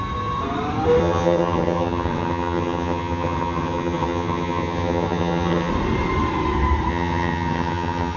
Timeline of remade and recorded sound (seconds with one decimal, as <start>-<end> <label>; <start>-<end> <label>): 0.0-1.0 recorded; 1.0-5.7 remade; 5.7-6.9 recorded; 6.9-8.2 remade